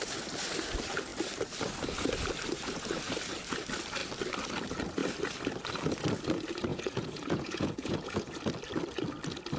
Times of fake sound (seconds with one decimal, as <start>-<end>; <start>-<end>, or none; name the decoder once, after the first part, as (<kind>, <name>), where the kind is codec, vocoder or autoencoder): 6.7-8.4 (vocoder, Vocos)

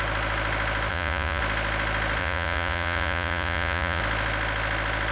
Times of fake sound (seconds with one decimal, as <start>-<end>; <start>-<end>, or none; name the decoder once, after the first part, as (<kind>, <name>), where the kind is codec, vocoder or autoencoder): 0.9-1.4 (vocoder, Vocos); 2.2-4.0

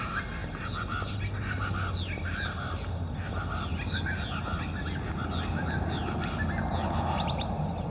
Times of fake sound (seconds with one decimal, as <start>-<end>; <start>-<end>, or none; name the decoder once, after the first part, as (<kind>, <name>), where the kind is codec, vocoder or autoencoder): none

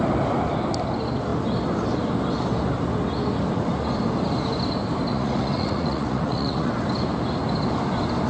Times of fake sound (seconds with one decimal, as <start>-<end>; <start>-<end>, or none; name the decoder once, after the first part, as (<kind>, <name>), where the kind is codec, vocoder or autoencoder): 5.1-6.7 (vocoder, Vocos)